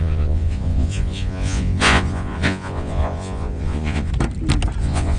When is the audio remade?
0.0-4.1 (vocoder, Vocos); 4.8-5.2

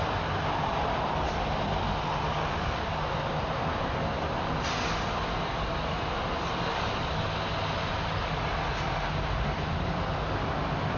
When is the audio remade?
none